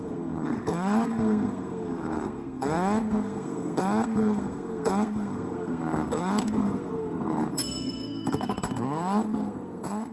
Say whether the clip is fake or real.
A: fake